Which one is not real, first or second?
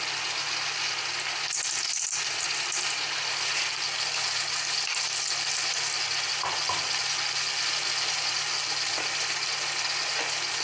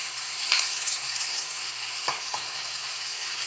second